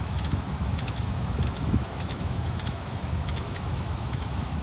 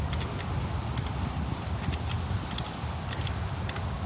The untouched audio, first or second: second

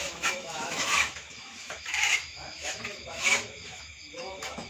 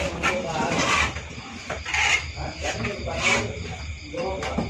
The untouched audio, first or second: second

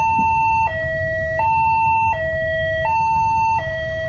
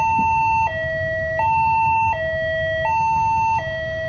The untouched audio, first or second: second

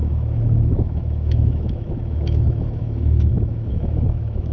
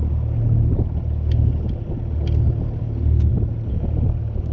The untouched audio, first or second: second